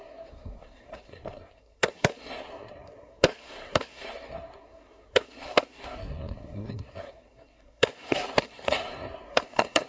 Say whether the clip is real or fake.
fake